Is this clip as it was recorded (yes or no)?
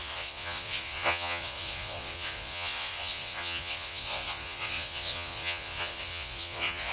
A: no